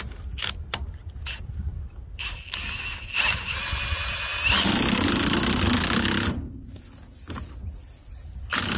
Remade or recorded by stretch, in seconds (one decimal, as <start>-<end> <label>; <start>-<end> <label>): 0.0-8.8 recorded